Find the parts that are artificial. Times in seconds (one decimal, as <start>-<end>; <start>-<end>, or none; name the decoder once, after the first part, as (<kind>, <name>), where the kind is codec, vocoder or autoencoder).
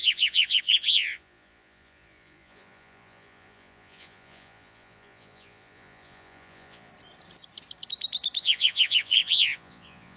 0.0-6.9 (vocoder, Vocos); 8.4-10.2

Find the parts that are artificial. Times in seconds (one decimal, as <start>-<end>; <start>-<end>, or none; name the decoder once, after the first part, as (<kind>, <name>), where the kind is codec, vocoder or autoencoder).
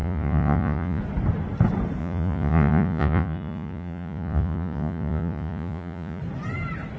0.0-1.0 (vocoder, Vocos); 2.0-6.2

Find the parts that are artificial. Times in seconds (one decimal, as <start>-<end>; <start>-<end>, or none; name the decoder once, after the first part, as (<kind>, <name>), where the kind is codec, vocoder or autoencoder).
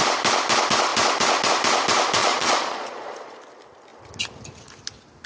2.2-3.4 (vocoder, Vocos)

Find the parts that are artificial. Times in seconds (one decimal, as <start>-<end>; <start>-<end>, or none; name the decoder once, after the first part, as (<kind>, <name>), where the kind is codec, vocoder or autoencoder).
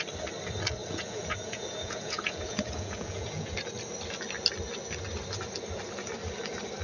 0.8-3.5 (vocoder, Vocos)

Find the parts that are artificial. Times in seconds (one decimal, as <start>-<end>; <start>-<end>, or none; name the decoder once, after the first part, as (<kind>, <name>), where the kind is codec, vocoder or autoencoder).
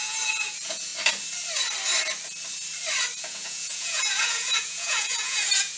0.0-0.9 (vocoder, Vocos); 3.2-5.8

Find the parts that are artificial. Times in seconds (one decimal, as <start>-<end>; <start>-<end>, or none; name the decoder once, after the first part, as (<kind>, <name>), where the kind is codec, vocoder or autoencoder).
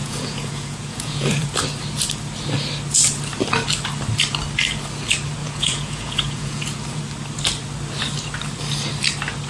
0.0-1.6 (vocoder, Vocos); 5.4-7.0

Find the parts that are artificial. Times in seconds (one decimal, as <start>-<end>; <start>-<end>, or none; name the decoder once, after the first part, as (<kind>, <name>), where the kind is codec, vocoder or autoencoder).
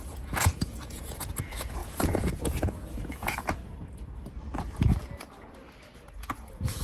0.0-3.6 (vocoder, Vocos); 6.1-6.8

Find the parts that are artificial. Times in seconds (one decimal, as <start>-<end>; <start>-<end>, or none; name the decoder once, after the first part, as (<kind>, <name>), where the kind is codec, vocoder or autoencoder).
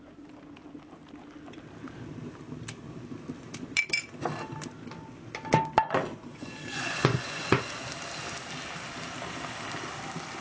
6.1-7.8 (vocoder, Vocos)